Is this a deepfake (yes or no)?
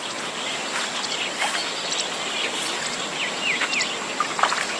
no